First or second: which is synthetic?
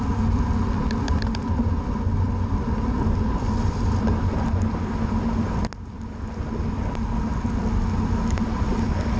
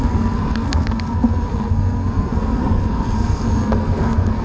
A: second